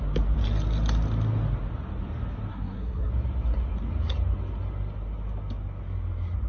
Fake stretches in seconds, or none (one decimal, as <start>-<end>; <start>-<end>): 2.5-3.1